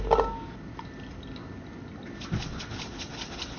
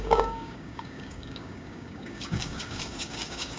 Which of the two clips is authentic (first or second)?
first